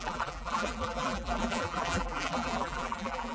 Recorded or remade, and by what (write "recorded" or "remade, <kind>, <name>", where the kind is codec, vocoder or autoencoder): remade, vocoder, BigVGAN v2